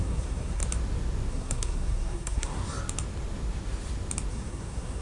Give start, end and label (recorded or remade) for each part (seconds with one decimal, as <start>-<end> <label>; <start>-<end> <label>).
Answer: 0.0-0.6 remade; 0.6-1.3 recorded; 1.3-2.6 remade; 2.6-4.3 recorded; 4.3-5.0 remade